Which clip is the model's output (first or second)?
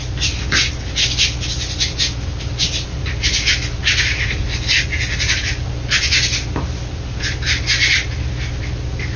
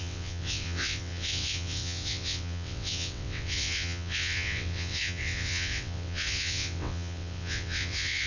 second